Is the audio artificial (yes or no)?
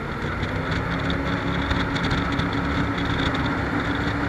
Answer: no